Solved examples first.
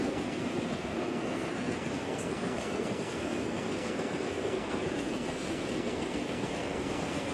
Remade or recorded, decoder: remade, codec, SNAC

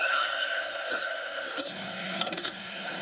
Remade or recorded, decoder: remade, codec, SNAC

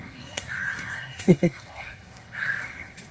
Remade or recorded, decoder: remade, codec, SNAC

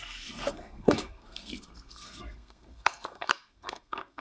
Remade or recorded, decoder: remade, codec, SNAC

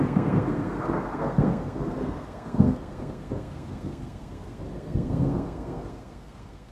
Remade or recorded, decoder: remade, codec, SNAC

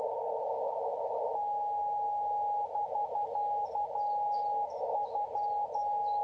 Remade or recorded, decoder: recorded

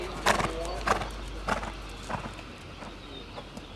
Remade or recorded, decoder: recorded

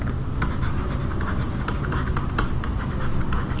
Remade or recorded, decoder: recorded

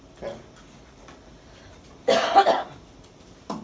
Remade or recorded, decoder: recorded